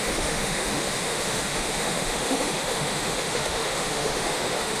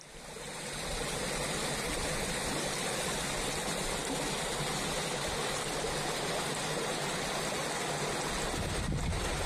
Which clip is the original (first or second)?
second